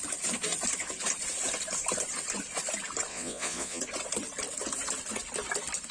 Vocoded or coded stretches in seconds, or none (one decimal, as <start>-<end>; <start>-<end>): 3.1-3.8